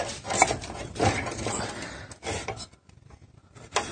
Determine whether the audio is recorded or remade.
recorded